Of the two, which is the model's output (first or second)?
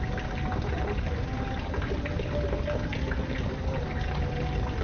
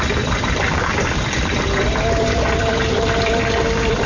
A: second